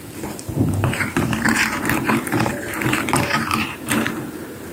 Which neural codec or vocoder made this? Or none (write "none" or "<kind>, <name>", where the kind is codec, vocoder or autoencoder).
vocoder, BigVGAN v2